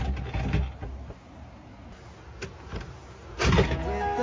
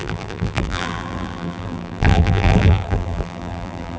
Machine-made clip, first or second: second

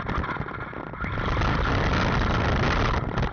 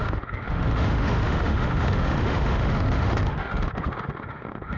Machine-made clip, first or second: second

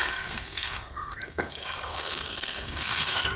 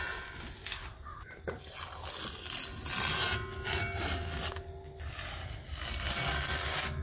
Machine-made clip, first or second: first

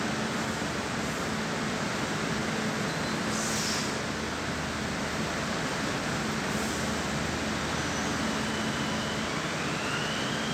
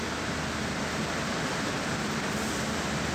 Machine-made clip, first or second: second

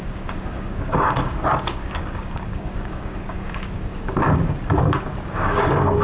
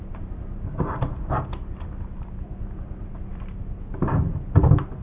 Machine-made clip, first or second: first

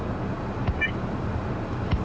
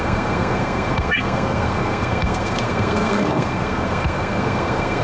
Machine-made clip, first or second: second